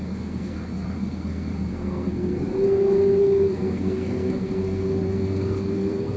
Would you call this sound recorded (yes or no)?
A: no